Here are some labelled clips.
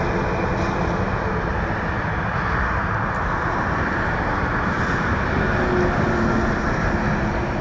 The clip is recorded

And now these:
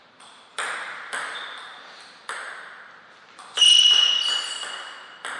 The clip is recorded